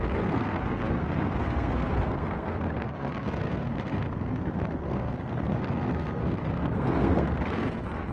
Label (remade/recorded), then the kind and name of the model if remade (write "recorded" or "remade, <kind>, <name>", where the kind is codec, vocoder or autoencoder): remade, codec, SNAC